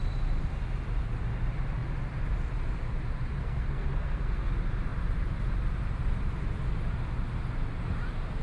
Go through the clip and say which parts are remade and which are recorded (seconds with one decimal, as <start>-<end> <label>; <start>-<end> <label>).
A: 0.0-3.4 recorded; 3.4-4.5 remade; 4.5-8.4 recorded